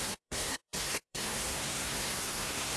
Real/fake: fake